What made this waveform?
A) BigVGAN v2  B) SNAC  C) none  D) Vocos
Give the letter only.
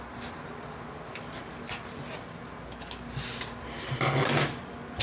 C